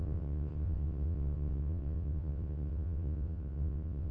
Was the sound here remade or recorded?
remade